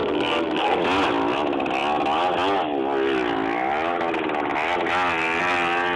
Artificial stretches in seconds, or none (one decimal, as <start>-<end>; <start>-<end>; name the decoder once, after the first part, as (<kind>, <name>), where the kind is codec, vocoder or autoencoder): 0.0-0.8 (codec, SNAC)